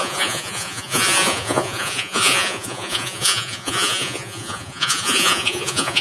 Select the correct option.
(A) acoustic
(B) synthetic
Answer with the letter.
B